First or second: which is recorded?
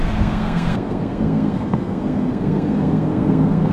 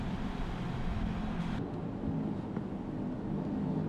second